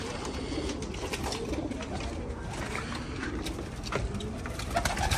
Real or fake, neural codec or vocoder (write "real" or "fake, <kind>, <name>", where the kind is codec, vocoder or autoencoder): fake, vocoder, BigVGAN v2